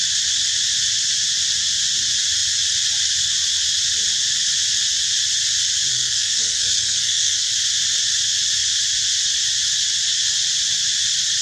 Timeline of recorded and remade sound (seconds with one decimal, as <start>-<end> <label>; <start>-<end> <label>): 0.0-5.9 recorded; 5.9-7.5 remade; 7.5-11.4 recorded